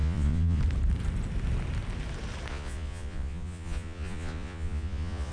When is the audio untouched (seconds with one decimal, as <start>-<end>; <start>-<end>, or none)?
0.6-2.5

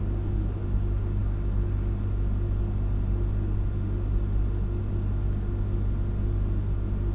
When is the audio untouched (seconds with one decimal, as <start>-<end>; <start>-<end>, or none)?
0.0-7.1

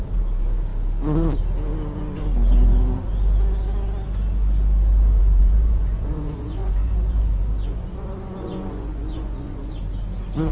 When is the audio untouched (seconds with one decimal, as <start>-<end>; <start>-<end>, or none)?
0.0-5.2; 9.7-10.5

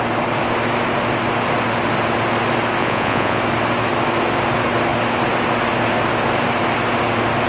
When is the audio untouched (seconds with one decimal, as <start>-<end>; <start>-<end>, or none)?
0.0-2.8; 3.4-7.5

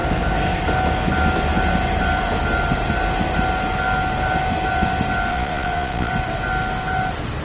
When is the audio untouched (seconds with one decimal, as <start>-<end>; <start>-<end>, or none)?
0.0-5.3; 6.1-7.4

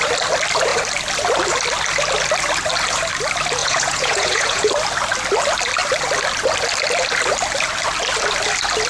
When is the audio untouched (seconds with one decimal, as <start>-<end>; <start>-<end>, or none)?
0.0-3.6; 4.7-8.9

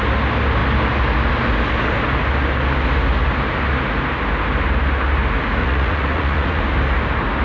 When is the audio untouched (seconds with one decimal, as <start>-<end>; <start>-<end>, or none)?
0.0-5.6; 6.6-7.4